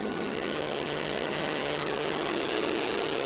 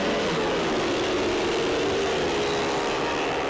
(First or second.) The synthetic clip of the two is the first